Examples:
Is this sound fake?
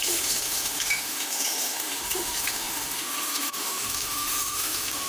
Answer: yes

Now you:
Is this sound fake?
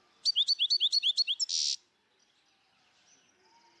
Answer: no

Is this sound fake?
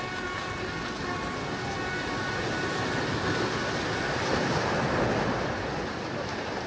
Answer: no